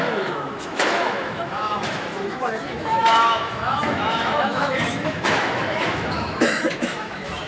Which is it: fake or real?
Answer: fake